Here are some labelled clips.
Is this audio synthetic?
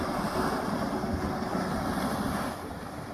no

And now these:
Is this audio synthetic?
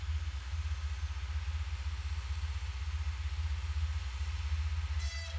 no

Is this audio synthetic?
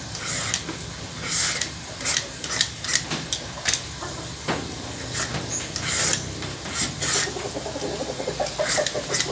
no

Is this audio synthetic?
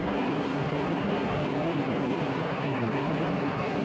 yes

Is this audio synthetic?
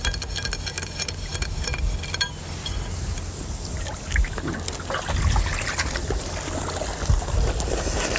no